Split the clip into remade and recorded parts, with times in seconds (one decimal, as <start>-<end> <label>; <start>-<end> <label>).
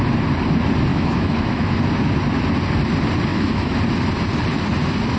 0.0-0.9 recorded; 0.9-1.8 remade; 1.8-3.3 recorded; 3.3-3.8 remade; 3.8-5.2 recorded